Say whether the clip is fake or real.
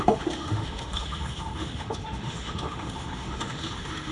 fake